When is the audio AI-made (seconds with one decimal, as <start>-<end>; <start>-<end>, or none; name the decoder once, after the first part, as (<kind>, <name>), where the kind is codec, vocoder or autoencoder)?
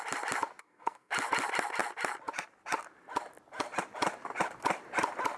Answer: 0.6-1.1 (codec, SNAC)